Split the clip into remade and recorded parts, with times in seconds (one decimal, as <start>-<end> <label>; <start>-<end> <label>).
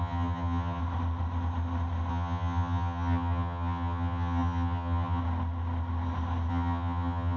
0.0-0.8 remade; 0.8-2.1 recorded; 2.1-5.2 remade; 5.2-6.5 recorded; 6.5-7.4 remade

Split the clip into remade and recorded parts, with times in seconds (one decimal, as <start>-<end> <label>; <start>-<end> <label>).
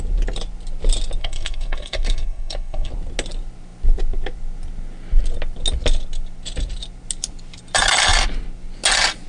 0.0-1.2 recorded; 1.2-2.9 remade; 2.9-9.3 recorded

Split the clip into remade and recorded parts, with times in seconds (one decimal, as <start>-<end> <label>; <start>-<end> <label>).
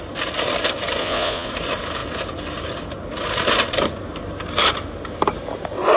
0.0-1.0 recorded; 1.0-1.5 remade; 1.5-6.0 recorded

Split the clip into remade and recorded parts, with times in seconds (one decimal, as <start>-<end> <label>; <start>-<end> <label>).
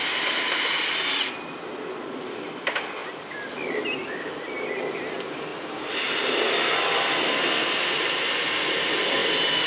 0.0-9.7 recorded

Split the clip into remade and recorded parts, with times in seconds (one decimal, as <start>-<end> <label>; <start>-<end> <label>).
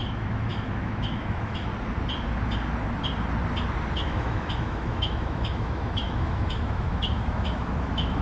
0.0-1.7 remade; 1.7-3.9 recorded; 3.9-8.2 remade